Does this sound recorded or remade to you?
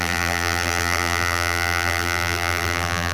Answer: remade